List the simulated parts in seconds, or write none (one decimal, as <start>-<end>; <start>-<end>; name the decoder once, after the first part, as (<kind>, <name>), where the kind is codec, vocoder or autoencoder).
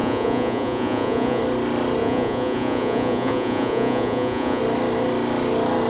0.0-1.4 (vocoder, Vocos); 2.0-4.6